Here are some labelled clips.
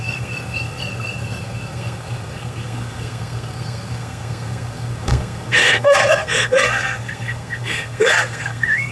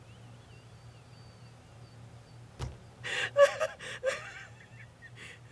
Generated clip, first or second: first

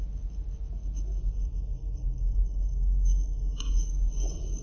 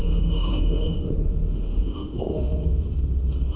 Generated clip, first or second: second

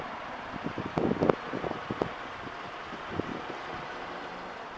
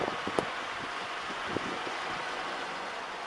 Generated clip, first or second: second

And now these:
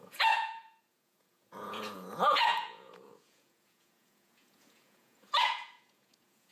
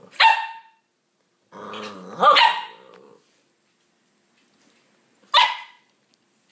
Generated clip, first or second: first